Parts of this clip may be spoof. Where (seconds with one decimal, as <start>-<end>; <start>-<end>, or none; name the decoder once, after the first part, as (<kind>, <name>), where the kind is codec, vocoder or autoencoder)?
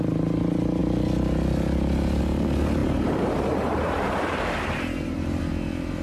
2.8-5.4 (vocoder, BigVGAN v2)